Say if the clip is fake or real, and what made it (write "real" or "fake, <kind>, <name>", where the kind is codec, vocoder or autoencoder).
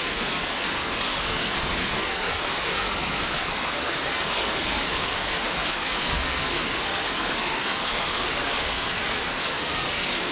fake, codec, SNAC